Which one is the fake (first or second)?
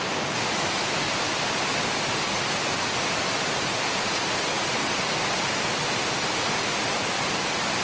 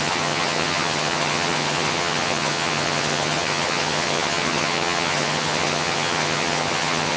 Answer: second